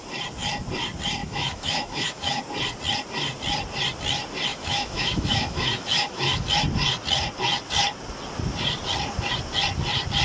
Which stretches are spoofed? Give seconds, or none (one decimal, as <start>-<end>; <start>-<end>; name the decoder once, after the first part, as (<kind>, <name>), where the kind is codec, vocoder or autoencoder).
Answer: 1.2-2.4 (autoencoder, DAC-VAE); 4.5-6.5